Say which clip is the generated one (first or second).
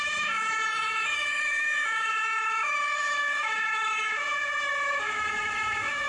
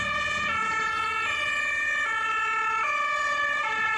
first